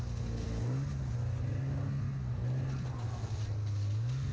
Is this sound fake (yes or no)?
no